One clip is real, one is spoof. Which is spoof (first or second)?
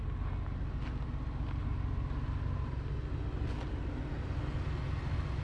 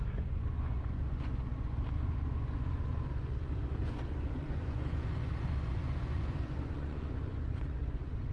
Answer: second